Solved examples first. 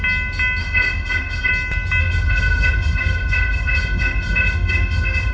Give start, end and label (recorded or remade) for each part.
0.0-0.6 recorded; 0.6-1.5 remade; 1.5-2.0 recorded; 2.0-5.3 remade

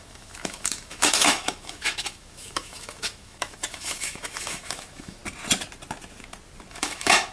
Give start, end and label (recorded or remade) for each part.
0.0-5.2 remade; 5.2-6.7 recorded; 6.7-7.3 remade

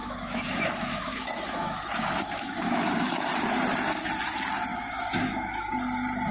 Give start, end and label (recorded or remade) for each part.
0.0-3.3 remade; 3.3-4.7 recorded; 4.7-5.7 remade; 5.7-6.3 recorded

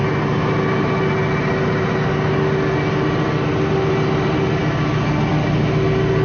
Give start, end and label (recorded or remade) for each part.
0.0-6.2 recorded